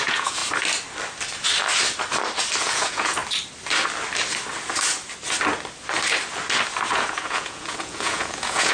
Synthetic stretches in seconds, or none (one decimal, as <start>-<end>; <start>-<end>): 0.0-0.4; 2.6-3.2; 6.9-8.7